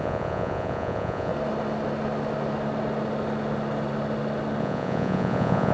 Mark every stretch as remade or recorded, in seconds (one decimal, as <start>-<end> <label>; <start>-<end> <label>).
0.0-1.3 remade; 1.3-4.6 recorded; 4.6-5.7 remade